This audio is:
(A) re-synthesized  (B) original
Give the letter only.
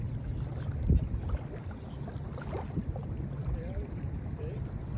B